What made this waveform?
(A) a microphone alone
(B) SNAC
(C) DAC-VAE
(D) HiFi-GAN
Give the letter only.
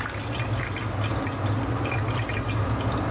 A